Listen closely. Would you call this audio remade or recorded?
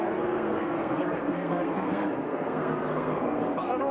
remade